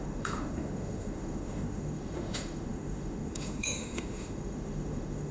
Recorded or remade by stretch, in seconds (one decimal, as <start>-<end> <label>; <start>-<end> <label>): 0.0-5.3 remade